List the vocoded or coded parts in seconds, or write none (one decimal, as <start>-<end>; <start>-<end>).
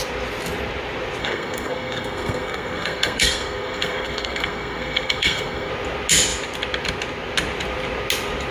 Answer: 1.2-5.7